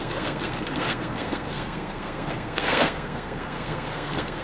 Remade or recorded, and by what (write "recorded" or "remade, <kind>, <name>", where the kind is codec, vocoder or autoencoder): remade, codec, SNAC